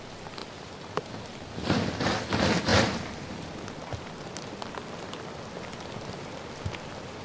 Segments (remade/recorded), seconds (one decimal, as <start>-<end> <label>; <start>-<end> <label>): 0.0-7.2 recorded